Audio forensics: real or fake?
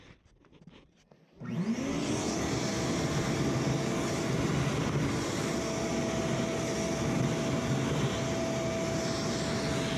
real